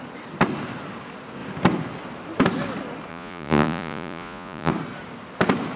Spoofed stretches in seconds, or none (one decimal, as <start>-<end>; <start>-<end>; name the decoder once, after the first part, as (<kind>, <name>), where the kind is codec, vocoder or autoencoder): 3.1-4.7 (vocoder, Vocos)